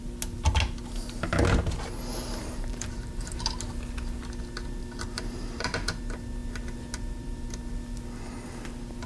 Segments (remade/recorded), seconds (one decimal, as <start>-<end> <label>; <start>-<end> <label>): 0.0-2.1 recorded; 2.1-3.3 remade; 3.3-4.8 recorded; 4.8-6.0 remade; 6.0-9.1 recorded